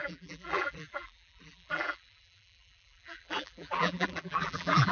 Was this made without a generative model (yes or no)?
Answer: no